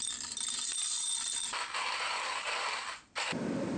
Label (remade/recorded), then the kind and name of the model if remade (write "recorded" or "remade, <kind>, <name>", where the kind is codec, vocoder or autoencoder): recorded